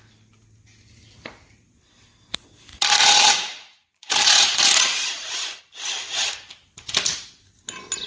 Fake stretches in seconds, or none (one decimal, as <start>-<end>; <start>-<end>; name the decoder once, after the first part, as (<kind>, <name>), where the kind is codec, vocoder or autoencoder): 2.7-5.6 (vocoder, Vocos)